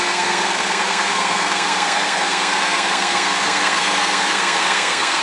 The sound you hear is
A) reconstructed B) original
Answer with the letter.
A